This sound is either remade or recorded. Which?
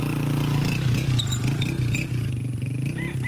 recorded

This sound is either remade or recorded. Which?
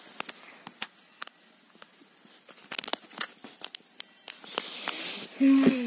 recorded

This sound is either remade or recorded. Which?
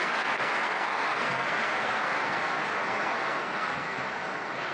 remade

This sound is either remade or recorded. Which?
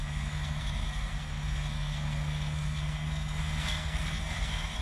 remade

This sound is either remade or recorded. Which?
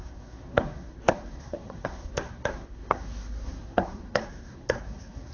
remade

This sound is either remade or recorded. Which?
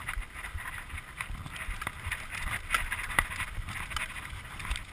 recorded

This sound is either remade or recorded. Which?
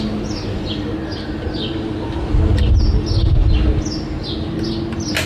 recorded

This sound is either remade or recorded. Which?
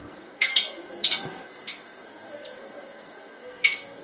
remade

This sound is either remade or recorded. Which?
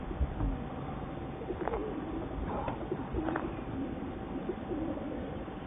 recorded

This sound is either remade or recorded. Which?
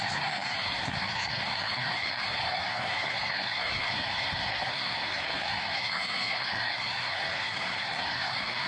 remade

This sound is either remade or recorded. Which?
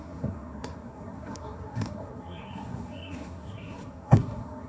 remade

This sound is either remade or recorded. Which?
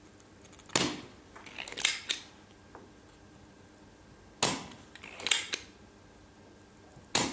recorded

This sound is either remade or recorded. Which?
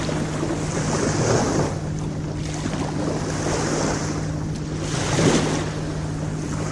recorded